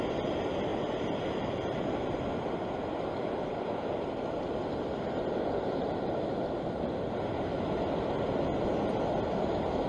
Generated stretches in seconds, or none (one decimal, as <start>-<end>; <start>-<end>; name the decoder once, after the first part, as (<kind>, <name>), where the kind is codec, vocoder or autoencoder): none